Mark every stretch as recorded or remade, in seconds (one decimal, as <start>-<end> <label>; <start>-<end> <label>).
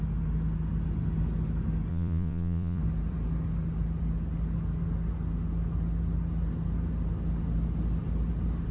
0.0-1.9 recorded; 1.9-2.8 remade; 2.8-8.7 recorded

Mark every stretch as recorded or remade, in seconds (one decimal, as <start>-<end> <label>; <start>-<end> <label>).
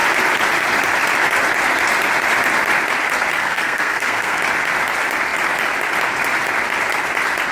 0.0-3.4 recorded; 3.4-4.4 remade; 4.4-7.5 recorded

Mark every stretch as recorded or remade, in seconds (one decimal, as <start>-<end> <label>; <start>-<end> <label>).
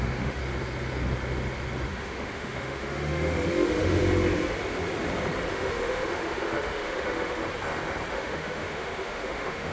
0.0-0.4 remade; 0.4-1.9 recorded; 1.9-4.0 remade; 4.0-5.5 recorded; 5.5-7.4 remade; 7.4-8.1 recorded; 8.1-9.7 remade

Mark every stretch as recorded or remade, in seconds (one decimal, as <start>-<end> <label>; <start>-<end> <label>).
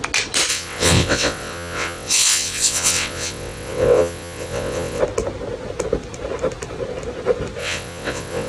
0.0-0.5 recorded; 0.5-5.0 remade; 5.0-7.6 recorded; 7.6-8.5 remade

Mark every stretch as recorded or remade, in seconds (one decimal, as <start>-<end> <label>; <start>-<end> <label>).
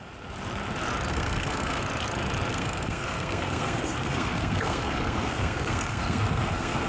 0.0-1.1 recorded; 1.1-1.8 remade; 1.8-2.5 recorded; 2.5-6.9 remade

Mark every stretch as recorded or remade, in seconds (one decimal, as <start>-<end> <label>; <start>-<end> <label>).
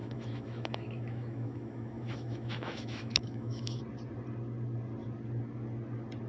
0.0-3.8 remade; 3.8-6.3 recorded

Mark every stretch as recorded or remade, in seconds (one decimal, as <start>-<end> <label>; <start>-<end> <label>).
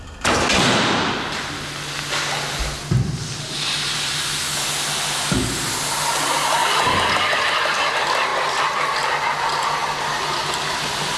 0.0-11.2 recorded